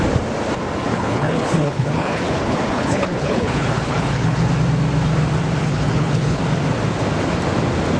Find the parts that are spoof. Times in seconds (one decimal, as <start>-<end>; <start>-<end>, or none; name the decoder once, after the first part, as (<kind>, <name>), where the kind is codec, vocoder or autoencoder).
0.9-4.5 (codec, HILCodec); 5.6-6.4